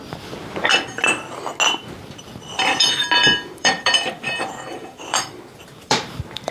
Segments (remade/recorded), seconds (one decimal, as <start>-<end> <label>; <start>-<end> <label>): 0.0-3.2 recorded; 3.2-6.5 remade